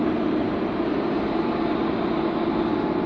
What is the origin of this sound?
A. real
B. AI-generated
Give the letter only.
A